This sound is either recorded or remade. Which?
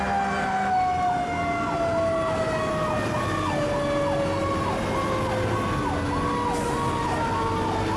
recorded